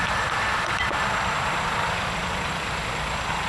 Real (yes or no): no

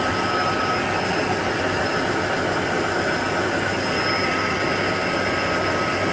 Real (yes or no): yes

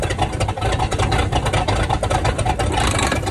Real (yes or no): yes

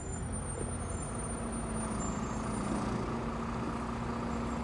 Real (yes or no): yes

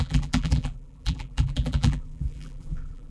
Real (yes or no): no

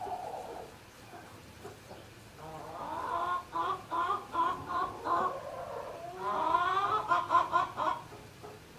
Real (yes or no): yes